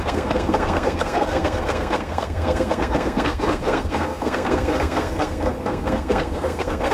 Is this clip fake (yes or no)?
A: yes